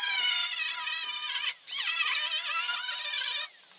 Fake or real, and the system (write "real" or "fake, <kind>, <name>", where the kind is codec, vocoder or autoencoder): real